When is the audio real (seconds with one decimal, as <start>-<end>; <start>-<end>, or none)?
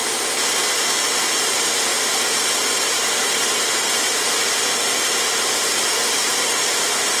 0.0-7.2